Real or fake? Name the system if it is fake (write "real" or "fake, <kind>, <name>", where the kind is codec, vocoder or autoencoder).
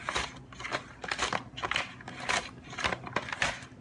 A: real